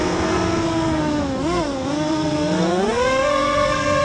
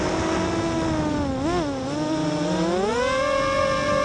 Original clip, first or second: second